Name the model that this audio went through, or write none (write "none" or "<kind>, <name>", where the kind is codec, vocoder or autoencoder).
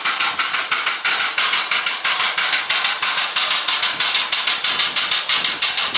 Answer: none